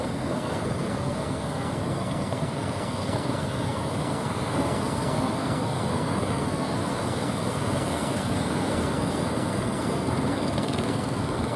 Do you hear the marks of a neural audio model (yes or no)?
yes